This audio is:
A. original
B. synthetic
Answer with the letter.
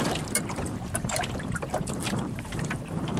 B